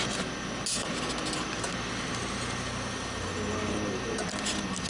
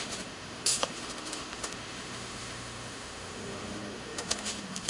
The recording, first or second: first